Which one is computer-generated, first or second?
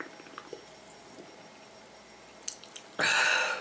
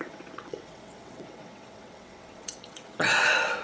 second